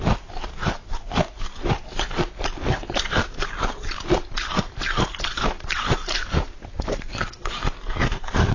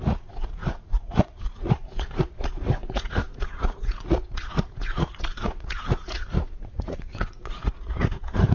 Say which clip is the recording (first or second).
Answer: first